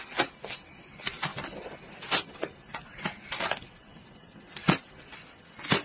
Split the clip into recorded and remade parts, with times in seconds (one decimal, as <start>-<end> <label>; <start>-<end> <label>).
0.0-5.8 recorded